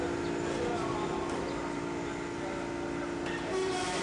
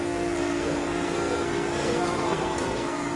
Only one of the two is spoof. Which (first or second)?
second